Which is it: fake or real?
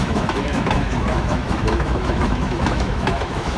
fake